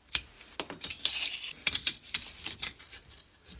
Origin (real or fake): real